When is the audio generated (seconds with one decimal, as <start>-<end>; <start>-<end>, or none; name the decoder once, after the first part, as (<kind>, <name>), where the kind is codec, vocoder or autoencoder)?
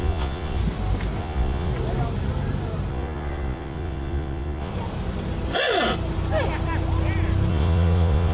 0.0-0.6 (vocoder, Vocos); 1.2-1.7; 2.9-4.7; 7.5-8.3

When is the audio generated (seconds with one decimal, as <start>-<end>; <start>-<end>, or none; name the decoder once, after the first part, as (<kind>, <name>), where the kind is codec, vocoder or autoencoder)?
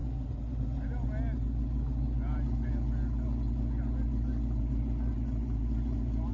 none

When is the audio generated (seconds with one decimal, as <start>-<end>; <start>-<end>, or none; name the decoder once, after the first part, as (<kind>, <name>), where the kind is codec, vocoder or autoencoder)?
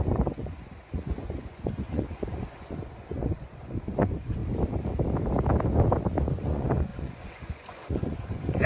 0.0-4.4 (vocoder, Vocos); 6.4-8.7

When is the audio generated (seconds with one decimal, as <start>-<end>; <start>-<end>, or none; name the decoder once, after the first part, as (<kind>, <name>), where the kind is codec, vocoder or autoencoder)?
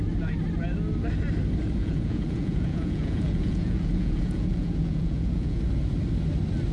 1.8-5.6 (vocoder, Vocos)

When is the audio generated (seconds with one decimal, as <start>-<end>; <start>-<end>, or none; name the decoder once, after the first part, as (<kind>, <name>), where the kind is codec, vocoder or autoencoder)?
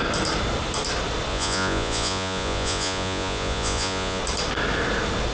1.3-4.2 (vocoder, Vocos)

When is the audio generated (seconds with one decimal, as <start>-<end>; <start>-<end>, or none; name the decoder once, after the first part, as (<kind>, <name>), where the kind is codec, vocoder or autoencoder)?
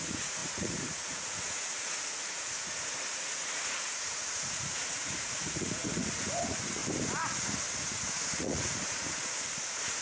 0.0-6.8 (vocoder, Vocos); 7.7-10.0